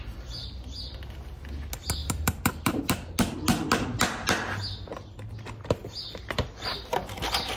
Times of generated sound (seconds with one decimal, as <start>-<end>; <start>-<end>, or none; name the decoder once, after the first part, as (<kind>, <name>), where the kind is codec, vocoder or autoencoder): 2.0-2.8 (vocoder, BigVGAN v2)